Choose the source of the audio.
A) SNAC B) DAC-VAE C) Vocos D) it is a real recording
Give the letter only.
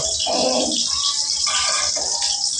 D